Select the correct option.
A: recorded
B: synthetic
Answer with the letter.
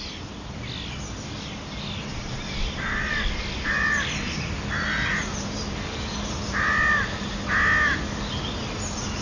A